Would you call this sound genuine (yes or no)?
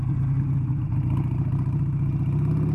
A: yes